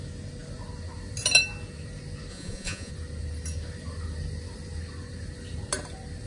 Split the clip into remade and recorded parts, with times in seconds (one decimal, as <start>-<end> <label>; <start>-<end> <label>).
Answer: 0.0-2.3 recorded; 2.3-2.9 remade; 2.9-6.3 recorded